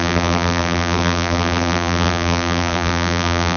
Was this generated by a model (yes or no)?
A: yes